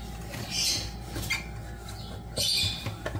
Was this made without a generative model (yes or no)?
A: yes